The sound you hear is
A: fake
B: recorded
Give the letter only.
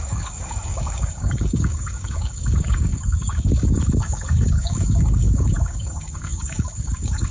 A